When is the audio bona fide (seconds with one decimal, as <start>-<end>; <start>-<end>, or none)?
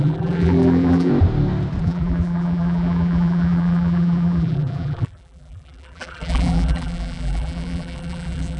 1.1-1.8